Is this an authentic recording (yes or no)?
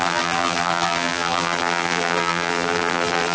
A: no